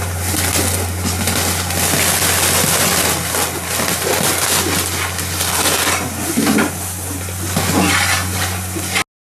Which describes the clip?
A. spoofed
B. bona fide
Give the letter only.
B